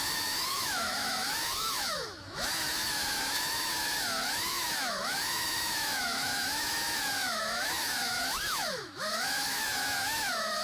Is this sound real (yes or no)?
no